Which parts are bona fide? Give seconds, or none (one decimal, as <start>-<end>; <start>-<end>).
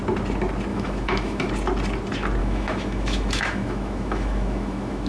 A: 0.0-0.7; 1.5-2.4